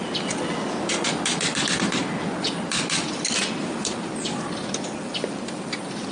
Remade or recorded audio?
recorded